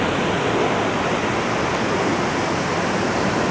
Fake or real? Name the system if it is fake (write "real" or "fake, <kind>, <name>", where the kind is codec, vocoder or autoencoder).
real